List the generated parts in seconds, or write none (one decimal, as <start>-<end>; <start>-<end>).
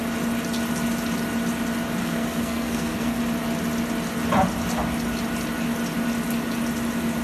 2.0-3.2